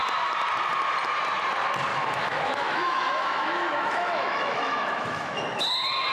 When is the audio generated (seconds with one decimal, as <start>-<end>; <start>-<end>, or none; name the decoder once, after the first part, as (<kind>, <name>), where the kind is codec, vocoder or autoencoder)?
1.9-5.6 (autoencoder, DAC-VAE)